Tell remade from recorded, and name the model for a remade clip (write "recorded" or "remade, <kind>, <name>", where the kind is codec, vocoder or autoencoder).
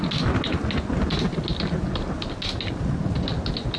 recorded